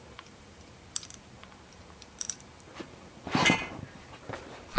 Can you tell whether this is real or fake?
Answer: fake